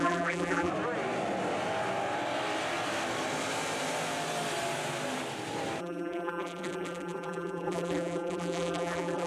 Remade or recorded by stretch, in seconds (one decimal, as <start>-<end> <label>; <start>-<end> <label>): 0.0-0.7 remade; 0.7-5.8 recorded; 5.8-9.3 remade